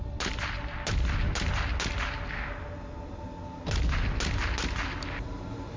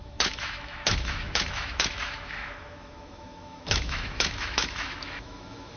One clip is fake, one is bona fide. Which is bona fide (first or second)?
first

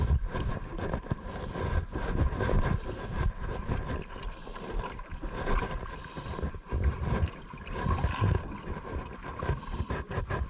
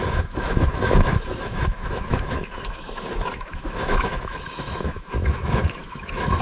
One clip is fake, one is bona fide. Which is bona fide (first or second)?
first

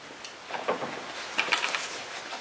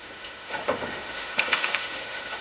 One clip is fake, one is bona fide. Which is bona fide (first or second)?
first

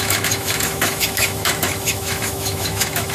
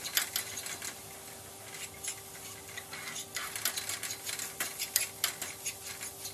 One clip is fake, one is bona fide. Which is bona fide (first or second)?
second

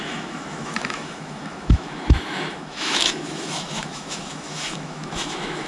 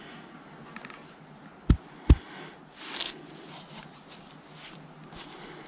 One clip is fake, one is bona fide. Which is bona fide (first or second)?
second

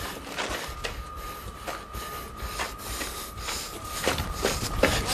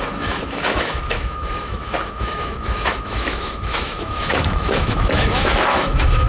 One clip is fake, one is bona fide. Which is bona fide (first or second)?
first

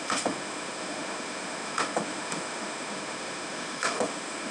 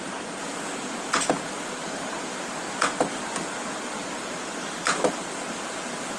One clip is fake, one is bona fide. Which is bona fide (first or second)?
second